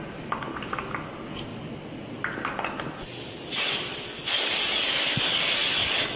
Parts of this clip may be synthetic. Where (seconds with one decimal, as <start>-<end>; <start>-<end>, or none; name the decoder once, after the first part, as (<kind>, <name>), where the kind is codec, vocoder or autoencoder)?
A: 1.5-5.2 (vocoder, BigVGAN v2)